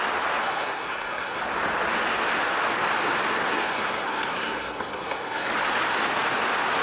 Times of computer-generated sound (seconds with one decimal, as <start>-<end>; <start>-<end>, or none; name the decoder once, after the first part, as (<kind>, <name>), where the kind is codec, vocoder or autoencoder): 0.4-1.4 (codec, SNAC); 3.3-5.5